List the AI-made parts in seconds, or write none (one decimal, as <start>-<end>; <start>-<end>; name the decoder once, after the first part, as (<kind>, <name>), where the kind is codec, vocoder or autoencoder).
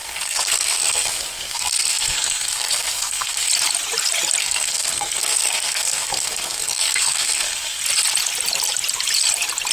0.0-3.5 (codec, SNAC); 4.4-7.8